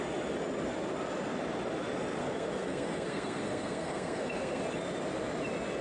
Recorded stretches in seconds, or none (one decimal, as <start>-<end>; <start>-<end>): 0.0-2.2; 4.6-5.8